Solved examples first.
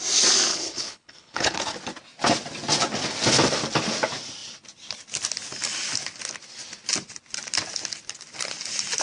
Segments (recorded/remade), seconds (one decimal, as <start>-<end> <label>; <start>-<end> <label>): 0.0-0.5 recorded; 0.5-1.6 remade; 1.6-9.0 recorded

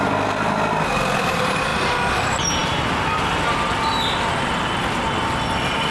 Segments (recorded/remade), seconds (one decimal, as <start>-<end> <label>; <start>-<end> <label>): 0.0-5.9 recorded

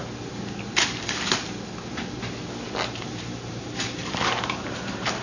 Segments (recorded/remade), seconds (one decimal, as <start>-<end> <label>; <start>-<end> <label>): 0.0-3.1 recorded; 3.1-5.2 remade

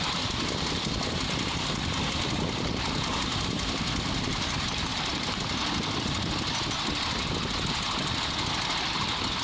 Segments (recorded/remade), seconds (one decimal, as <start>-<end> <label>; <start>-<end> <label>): 0.0-9.4 recorded

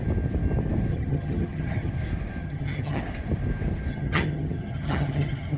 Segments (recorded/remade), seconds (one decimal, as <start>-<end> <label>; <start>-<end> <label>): 0.0-0.9 recorded; 0.9-1.9 remade; 1.9-2.4 recorded; 2.4-3.0 remade; 3.0-3.9 recorded; 3.9-5.6 remade